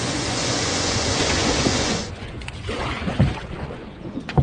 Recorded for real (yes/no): no